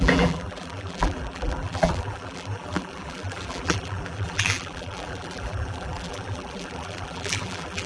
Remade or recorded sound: remade